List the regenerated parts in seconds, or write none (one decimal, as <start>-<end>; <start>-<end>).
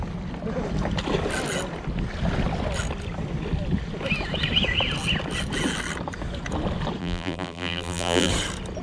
7.0-8.3